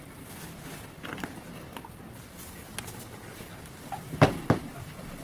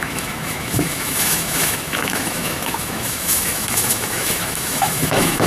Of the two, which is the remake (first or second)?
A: second